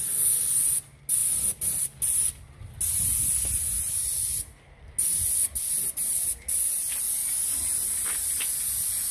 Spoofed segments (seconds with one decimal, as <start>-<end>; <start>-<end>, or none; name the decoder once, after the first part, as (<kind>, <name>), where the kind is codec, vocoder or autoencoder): none